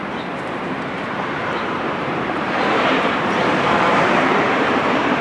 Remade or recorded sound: remade